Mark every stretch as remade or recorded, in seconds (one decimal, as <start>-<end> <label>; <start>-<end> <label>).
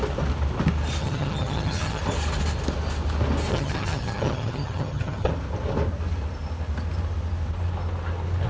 0.0-1.0 recorded; 1.0-2.0 remade; 2.0-3.5 recorded; 3.5-5.3 remade; 5.3-8.5 recorded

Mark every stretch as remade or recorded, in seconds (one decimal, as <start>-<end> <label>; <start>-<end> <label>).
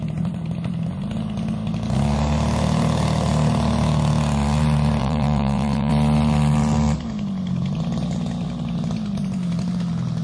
0.0-5.0 recorded; 5.0-5.9 remade; 5.9-10.2 recorded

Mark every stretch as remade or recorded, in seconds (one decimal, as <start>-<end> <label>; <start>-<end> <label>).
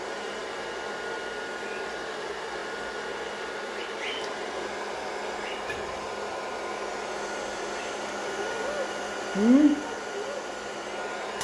0.0-11.4 recorded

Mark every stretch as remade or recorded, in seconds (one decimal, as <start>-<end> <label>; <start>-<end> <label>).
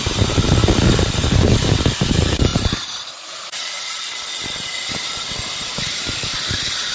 0.0-6.9 recorded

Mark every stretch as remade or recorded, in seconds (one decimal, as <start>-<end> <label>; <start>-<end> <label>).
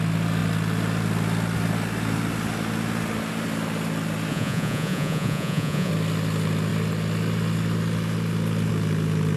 0.0-4.3 recorded; 4.3-5.9 remade; 5.9-9.4 recorded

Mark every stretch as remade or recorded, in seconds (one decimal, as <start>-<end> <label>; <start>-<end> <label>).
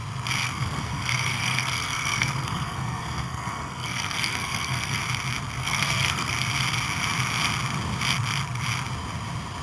0.0-0.4 recorded; 0.4-5.0 remade; 5.0-5.6 recorded; 5.6-6.3 remade; 6.3-9.6 recorded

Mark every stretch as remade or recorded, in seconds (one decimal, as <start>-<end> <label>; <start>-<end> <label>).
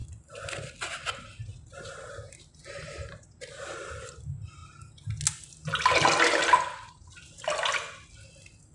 0.0-8.7 recorded